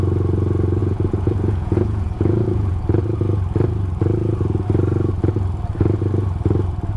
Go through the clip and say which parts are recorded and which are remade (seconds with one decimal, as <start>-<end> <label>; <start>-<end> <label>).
0.0-0.8 recorded; 0.8-2.8 remade; 2.8-7.0 recorded